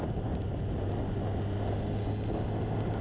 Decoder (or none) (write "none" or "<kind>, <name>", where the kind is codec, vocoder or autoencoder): none